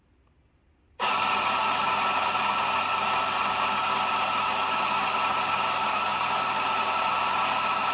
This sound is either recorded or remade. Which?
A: recorded